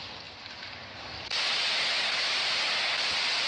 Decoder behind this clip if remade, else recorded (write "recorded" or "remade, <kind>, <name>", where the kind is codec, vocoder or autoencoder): recorded